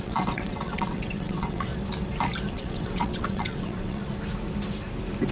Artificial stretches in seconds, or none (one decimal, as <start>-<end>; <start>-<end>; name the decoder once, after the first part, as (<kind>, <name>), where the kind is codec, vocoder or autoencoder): 0.0-1.7 (vocoder, WaveNeXt); 2.5-4.0